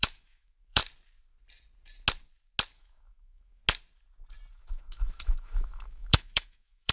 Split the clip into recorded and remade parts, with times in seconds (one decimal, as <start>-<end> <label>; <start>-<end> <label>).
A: 0.0-0.8 remade; 0.8-2.7 recorded; 2.7-3.6 remade; 3.6-4.5 recorded; 4.5-6.9 remade